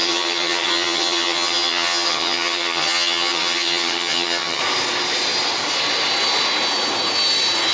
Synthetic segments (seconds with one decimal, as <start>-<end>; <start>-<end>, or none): 0.0-4.6